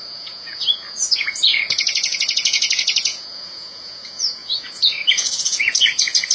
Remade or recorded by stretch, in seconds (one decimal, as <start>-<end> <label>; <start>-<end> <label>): 0.0-6.3 remade